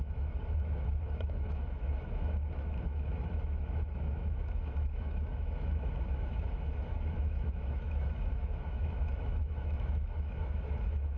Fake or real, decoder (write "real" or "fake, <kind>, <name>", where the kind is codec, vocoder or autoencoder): fake, autoencoder, DAC-VAE